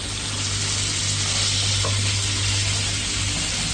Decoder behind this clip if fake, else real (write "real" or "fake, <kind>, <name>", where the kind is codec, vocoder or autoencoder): real